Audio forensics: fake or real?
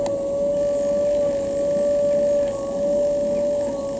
real